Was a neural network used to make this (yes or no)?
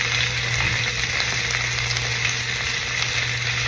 no